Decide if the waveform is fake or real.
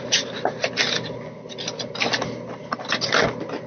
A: real